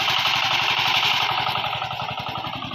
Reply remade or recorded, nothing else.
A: recorded